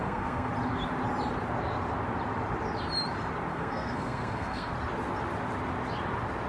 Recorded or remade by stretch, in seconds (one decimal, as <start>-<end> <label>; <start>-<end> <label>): 0.0-0.5 remade; 0.5-3.5 recorded; 3.5-4.7 remade; 4.7-6.5 recorded